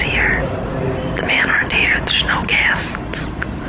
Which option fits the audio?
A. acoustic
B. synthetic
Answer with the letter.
A